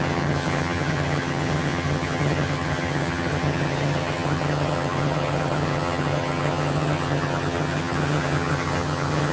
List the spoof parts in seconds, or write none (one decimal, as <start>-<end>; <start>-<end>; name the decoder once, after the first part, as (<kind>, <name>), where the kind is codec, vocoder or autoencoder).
0.0-9.3 (vocoder, HiFi-GAN)